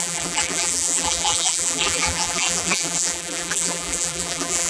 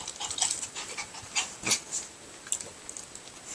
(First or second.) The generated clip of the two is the first